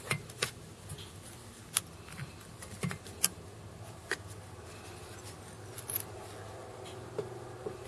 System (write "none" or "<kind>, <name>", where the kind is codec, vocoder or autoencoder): none